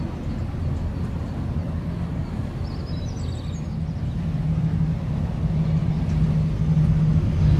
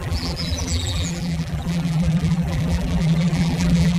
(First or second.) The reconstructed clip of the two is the second